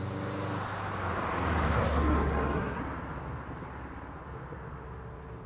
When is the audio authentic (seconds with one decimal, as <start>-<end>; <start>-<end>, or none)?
0.0-1.6; 2.8-5.5